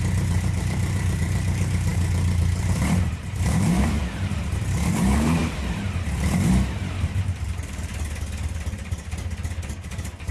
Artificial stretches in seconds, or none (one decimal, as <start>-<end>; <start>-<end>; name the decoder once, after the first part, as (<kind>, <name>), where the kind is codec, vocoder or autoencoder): 0.0-7.9 (vocoder, BigVGAN v2); 8.6-10.3